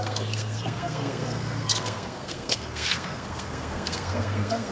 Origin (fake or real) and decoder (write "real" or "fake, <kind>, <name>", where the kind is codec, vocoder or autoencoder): fake, codec, SNAC